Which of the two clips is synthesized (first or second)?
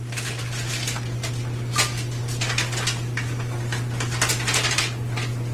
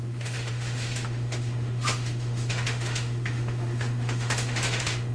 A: second